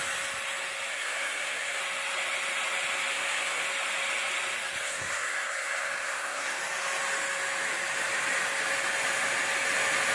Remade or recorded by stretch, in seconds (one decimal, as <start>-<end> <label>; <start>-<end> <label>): 0.0-0.9 recorded; 0.9-1.8 remade; 1.8-3.1 recorded; 3.1-3.6 remade; 3.6-4.8 recorded; 4.8-6.6 remade; 6.6-10.1 recorded